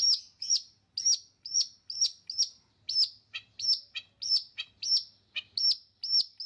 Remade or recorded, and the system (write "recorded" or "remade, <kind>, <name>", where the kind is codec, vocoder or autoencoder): recorded